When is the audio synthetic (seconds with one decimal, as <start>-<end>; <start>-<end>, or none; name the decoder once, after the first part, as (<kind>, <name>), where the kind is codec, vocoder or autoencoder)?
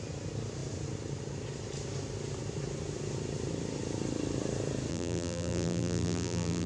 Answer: 4.9-6.7 (vocoder, BigVGAN v2)